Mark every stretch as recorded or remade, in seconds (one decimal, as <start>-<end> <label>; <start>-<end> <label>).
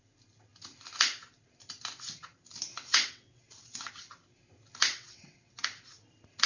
0.0-2.7 recorded; 2.7-3.9 remade; 3.9-4.9 recorded; 4.9-5.6 remade; 5.6-6.5 recorded